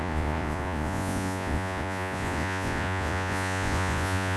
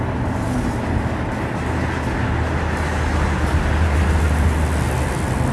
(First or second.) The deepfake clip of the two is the first